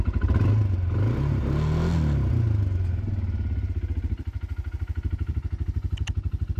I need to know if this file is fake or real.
real